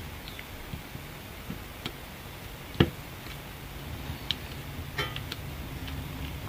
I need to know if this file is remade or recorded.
recorded